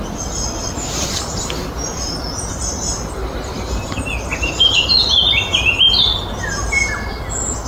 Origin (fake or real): real